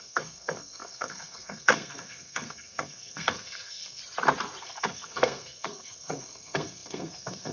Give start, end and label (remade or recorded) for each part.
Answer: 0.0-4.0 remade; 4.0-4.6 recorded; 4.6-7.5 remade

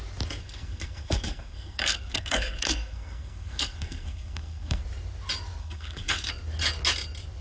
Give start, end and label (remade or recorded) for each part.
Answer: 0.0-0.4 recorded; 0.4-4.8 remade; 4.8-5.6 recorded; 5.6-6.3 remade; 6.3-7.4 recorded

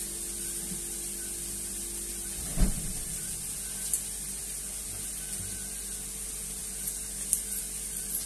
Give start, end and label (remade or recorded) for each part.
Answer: 0.0-8.3 recorded

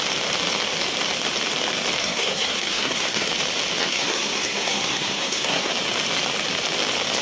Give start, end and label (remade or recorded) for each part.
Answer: 0.0-2.0 recorded; 2.0-3.3 remade; 3.3-3.8 recorded; 3.8-5.7 remade; 5.7-7.2 recorded

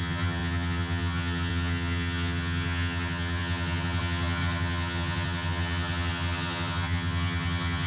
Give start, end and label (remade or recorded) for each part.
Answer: 0.0-7.9 remade

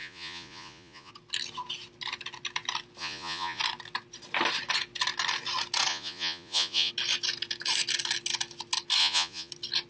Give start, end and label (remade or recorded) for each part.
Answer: 0.0-1.1 remade; 1.1-3.0 recorded; 3.0-3.6 remade; 3.6-5.9 recorded; 5.9-6.9 remade; 6.9-9.0 recorded; 9.0-9.5 remade; 9.5-9.9 recorded

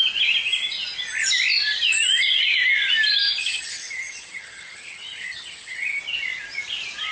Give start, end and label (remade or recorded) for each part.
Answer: 0.0-3.4 recorded; 3.4-6.0 remade; 6.0-7.1 recorded